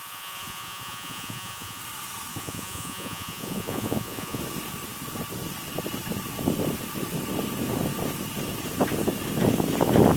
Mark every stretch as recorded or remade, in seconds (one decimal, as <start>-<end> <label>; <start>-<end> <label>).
0.0-1.8 remade; 1.8-2.3 recorded; 2.3-4.4 remade; 4.4-10.2 recorded